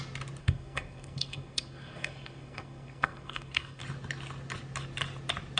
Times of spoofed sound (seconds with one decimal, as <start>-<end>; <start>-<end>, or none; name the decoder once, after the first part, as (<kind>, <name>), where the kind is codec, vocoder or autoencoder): 0.4-3.8 (codec, SNAC)